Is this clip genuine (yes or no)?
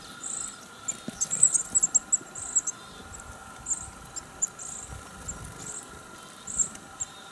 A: yes